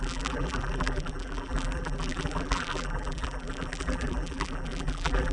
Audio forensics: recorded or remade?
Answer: remade